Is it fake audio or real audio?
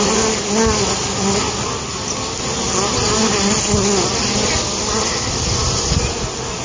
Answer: real